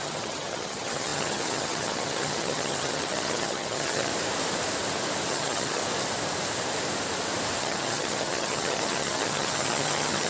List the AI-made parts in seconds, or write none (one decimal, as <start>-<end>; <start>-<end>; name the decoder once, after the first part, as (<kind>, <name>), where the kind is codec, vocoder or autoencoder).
0.0-4.1 (vocoder, HiFi-GAN); 5.3-5.8; 7.6-10.3